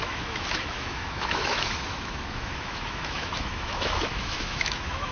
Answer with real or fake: fake